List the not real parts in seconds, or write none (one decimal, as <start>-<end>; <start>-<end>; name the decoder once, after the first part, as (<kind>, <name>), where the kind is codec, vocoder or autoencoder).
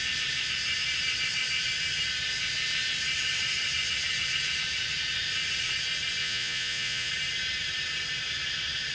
6.2-7.1 (vocoder, Vocos)